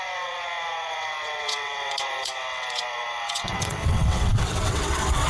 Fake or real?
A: fake